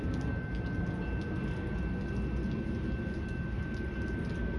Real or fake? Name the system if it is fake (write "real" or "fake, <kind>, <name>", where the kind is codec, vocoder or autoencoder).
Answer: real